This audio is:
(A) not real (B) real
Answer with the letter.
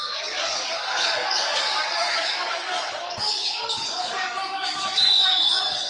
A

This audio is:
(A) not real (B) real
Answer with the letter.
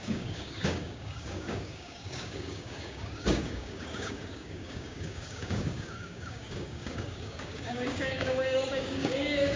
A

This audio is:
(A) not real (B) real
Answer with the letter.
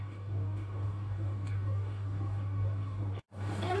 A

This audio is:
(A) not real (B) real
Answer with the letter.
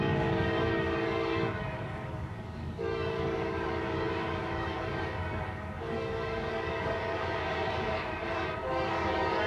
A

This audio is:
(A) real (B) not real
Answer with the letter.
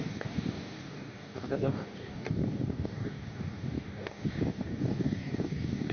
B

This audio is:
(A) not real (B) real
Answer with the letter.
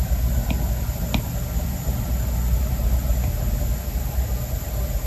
B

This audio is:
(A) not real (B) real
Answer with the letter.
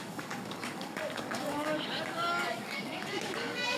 A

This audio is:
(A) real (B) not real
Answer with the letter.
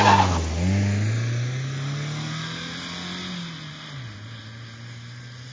A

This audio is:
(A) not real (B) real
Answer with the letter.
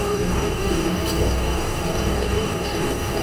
A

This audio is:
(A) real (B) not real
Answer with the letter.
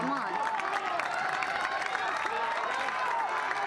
A